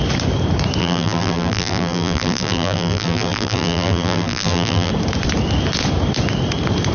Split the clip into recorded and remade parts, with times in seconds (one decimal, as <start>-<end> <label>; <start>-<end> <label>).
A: 0.0-0.8 recorded; 0.8-4.9 remade; 4.9-6.9 recorded